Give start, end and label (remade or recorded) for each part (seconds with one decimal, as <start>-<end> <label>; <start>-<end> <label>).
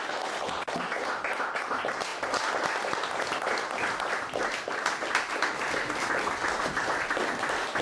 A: 0.0-7.8 recorded